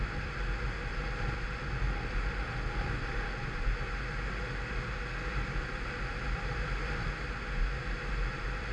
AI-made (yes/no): no